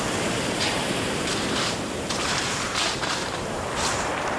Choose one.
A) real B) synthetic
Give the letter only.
B